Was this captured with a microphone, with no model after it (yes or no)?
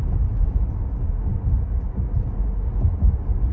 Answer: yes